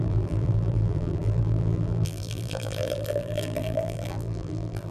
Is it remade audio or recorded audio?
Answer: remade